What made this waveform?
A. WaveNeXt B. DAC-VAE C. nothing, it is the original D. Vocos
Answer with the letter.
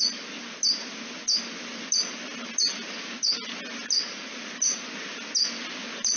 C